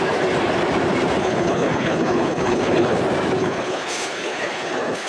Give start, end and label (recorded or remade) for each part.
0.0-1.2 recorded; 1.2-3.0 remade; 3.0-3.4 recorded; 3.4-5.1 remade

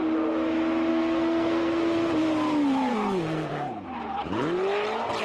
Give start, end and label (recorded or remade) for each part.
0.0-0.9 recorded; 0.9-2.1 remade; 2.1-2.9 recorded; 2.9-3.5 remade; 3.5-5.2 recorded

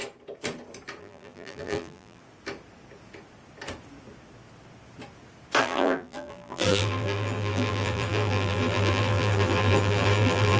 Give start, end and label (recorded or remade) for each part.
0.0-1.0 recorded; 1.0-2.2 remade; 2.2-5.6 recorded; 5.6-10.6 remade

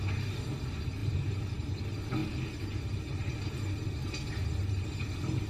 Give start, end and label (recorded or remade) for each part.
0.0-1.0 recorded; 1.0-1.8 remade; 1.8-5.5 recorded

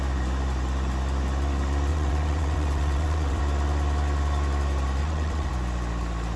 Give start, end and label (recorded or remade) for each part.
0.0-1.9 recorded; 1.9-3.4 remade; 3.4-5.0 recorded; 5.0-5.5 remade; 5.5-6.4 recorded